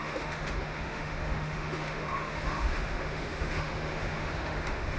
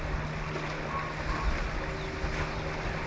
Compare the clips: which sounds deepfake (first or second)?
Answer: first